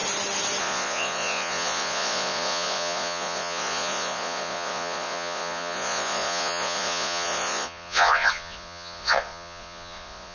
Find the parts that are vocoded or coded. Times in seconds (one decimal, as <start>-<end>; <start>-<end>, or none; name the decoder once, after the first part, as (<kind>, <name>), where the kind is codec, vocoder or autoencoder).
0.6-10.3 (vocoder, Vocos)